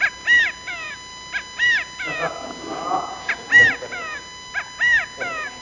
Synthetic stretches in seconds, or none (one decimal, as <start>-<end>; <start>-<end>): none